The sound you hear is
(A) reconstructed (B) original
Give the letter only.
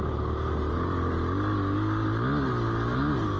B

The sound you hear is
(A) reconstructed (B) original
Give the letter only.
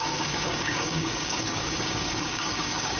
A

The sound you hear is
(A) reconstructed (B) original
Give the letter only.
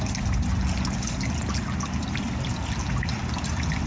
B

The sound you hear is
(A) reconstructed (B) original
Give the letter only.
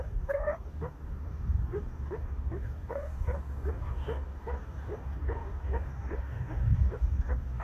A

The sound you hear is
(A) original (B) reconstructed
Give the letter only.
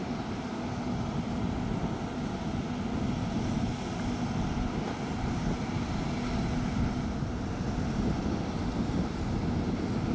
A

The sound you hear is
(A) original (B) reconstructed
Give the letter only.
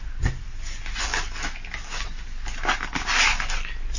A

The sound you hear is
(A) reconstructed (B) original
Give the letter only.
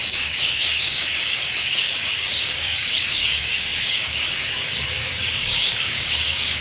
A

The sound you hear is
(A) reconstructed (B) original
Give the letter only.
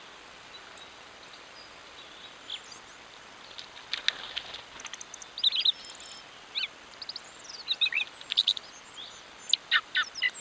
B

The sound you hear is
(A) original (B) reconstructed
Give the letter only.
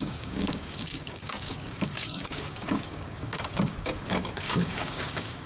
B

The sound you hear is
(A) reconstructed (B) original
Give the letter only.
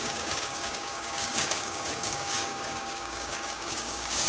A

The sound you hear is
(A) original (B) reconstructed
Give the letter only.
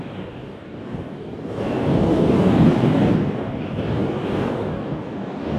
B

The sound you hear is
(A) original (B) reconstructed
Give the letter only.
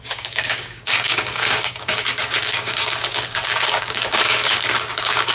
B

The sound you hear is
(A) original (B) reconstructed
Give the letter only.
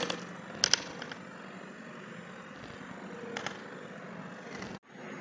A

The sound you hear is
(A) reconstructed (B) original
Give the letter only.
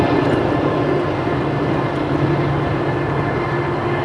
B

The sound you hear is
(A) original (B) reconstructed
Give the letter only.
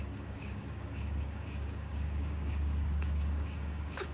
B